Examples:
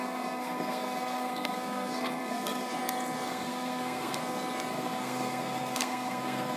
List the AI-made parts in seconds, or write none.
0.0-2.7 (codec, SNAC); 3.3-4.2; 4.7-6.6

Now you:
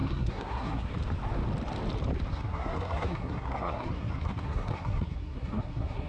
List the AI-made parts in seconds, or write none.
0.0-0.9 (codec, SNAC); 2.3-6.1

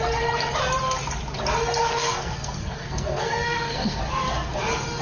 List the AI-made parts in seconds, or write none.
1.8-4.0 (codec, SNAC)

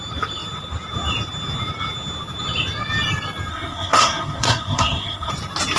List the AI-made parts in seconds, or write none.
3.5-5.3 (codec, SNAC)

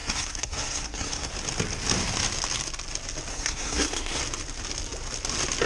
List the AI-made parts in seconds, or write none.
0.0-1.3 (codec, SNAC); 3.3-4.2

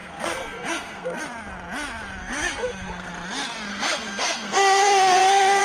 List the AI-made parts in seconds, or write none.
0.0-1.2 (codec, SNAC); 2.2-3.1; 3.7-5.6